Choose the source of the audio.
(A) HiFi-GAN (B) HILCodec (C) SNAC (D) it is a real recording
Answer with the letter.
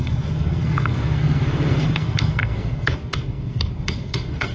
C